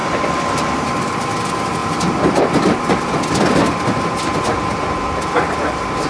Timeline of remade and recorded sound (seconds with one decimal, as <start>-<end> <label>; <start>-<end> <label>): 0.0-1.3 remade; 1.3-6.1 recorded